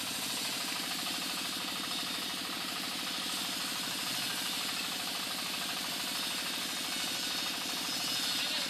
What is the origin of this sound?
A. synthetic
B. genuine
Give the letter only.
B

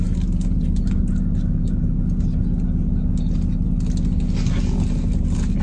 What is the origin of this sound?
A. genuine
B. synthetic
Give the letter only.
A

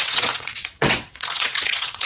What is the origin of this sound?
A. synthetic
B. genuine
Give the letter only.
A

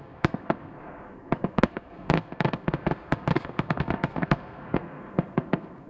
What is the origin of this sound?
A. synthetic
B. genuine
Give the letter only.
A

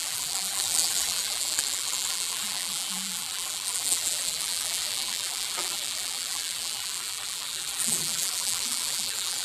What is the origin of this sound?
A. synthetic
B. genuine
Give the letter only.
A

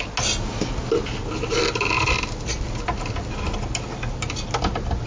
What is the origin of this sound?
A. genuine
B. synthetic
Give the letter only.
A